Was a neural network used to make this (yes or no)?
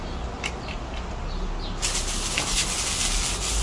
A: no